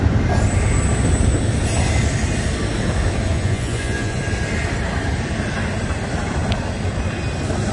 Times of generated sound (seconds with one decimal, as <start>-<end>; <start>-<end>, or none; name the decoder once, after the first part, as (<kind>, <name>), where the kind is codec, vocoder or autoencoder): 3.3-4.2 (vocoder, Vocos)